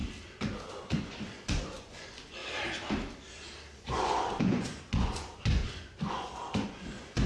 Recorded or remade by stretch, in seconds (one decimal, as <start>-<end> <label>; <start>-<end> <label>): 0.0-0.7 recorded; 0.7-2.4 remade; 2.4-3.8 recorded; 3.8-7.3 remade